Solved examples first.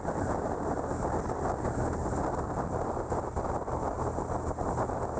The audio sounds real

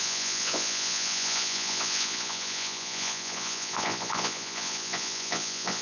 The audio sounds fake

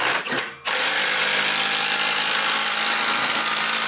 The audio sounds real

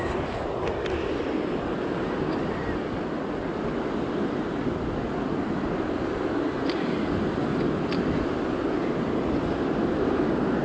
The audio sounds real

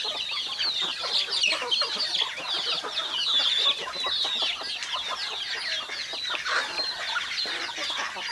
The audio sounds real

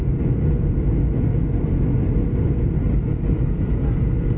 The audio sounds real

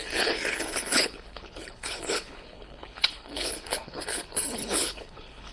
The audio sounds fake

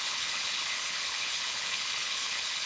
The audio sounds fake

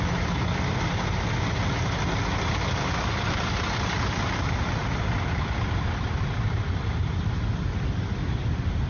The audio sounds real